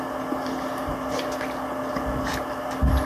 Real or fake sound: real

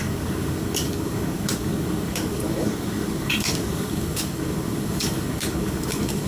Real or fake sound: fake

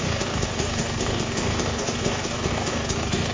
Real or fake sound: fake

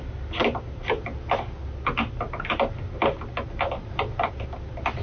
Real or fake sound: real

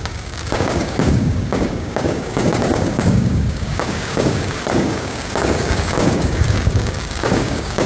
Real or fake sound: fake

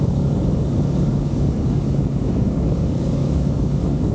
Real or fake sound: fake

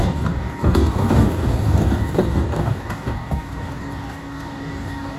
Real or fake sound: fake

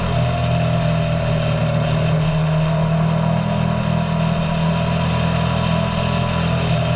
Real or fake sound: real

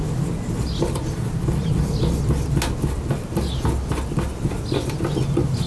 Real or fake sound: real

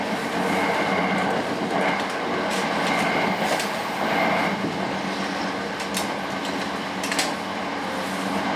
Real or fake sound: real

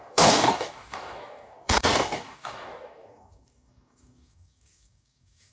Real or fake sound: fake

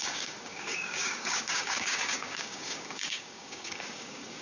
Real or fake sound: fake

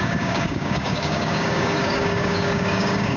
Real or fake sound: fake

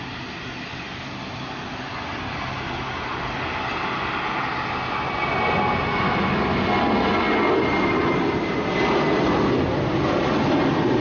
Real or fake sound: real